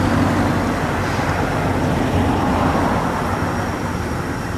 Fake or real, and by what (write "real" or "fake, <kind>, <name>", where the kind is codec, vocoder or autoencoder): real